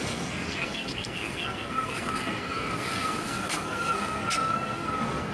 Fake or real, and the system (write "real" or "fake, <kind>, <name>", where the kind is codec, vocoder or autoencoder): fake, codec, SNAC